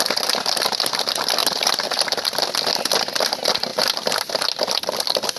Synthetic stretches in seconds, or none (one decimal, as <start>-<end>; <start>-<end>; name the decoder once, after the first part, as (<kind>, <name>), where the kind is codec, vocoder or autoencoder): 1.4-2.2 (vocoder, BigVGAN v2)